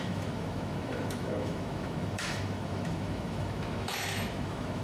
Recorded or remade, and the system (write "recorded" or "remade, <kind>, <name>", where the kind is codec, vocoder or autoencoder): remade, autoencoder, DAC-VAE